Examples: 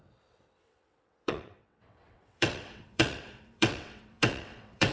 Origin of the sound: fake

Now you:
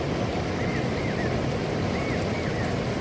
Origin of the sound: real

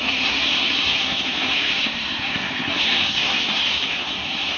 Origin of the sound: fake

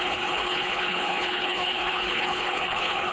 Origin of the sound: fake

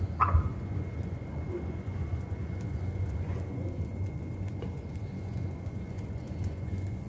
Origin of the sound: fake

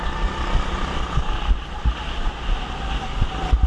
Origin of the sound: real